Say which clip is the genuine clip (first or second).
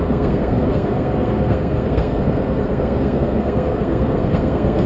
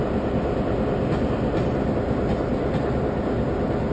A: second